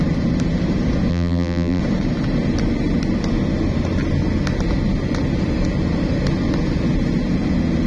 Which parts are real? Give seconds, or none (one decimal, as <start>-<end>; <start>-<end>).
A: 0.0-1.1; 1.8-7.9